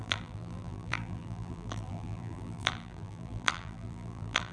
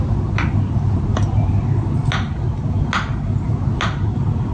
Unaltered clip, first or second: second